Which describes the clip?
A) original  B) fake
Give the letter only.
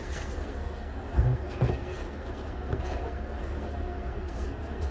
B